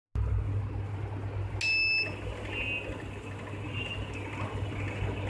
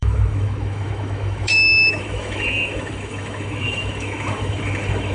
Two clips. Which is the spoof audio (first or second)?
second